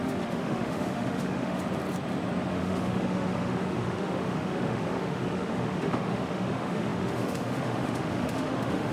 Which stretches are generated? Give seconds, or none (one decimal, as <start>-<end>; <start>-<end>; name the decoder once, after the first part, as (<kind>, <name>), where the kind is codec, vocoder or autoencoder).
0.0-1.6 (autoencoder, DAC-VAE); 2.5-8.9